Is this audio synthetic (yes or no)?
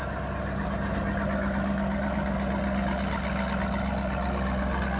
no